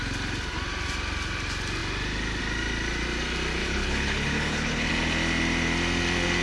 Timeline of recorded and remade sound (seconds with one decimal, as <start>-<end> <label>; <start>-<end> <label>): 0.0-3.6 recorded; 3.6-4.9 remade; 4.9-6.4 recorded